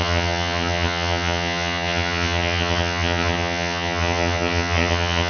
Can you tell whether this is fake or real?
fake